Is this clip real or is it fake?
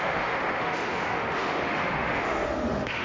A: fake